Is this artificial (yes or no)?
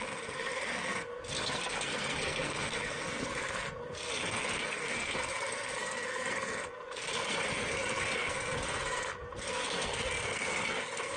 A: yes